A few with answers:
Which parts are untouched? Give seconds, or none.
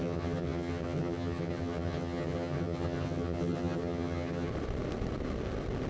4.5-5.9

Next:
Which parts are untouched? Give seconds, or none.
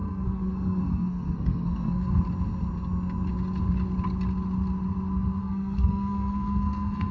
2.2-5.4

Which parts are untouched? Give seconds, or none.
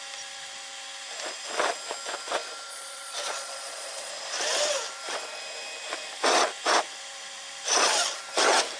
0.0-2.7; 4.1-8.8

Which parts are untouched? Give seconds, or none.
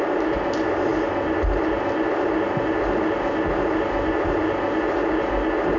0.0-5.8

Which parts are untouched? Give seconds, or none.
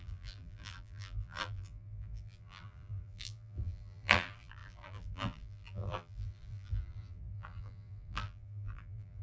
none